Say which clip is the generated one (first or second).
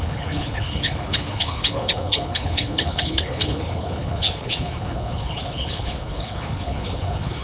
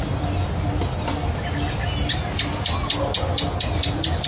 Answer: first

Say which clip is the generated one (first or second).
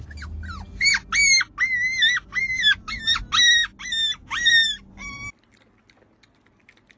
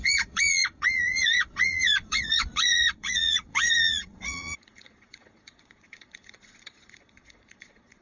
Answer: second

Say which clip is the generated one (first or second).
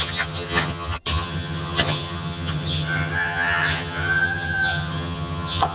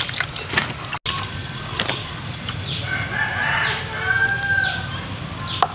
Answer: first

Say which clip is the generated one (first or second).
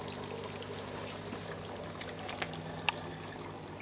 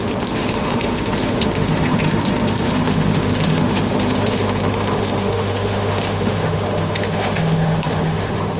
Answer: second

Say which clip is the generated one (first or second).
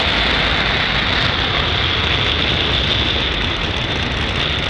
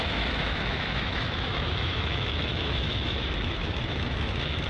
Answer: second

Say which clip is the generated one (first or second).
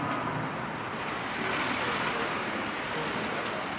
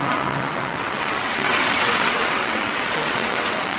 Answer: second